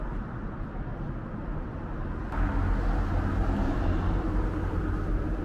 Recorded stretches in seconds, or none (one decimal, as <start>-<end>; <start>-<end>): 0.0-1.2; 1.9-5.4